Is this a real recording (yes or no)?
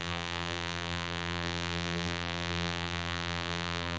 no